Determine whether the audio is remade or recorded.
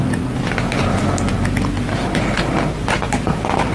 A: recorded